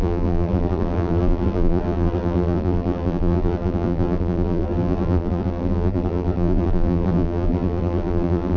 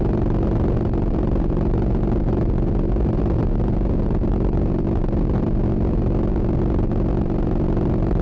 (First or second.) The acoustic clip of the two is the second